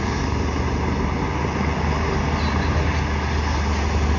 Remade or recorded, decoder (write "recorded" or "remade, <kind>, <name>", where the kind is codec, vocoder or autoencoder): recorded